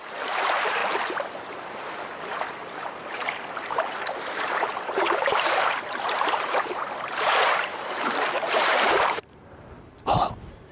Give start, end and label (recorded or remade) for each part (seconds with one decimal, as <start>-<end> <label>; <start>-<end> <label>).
0.0-0.8 remade; 0.8-2.5 recorded; 2.5-10.7 remade